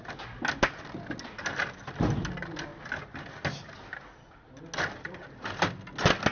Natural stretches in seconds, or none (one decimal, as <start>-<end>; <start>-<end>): 0.0-6.3